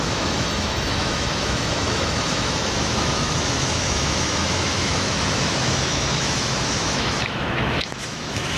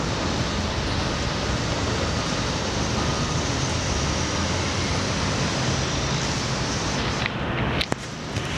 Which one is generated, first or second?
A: first